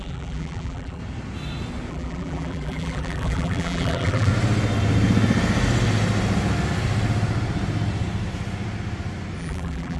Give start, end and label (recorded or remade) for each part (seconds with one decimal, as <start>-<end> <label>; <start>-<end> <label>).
0.0-1.0 remade; 1.0-1.9 recorded; 1.9-4.3 remade; 4.3-9.4 recorded; 9.4-10.0 remade